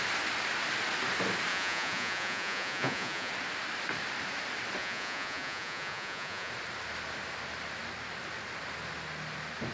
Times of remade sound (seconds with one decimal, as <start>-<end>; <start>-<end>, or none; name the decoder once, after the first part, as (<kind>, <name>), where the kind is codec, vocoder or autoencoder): 1.5-3.3 (vocoder, Vocos); 4.8-6.5